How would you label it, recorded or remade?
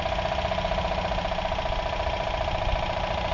recorded